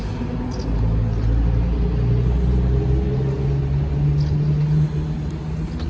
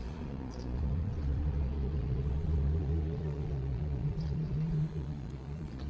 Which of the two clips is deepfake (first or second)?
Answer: second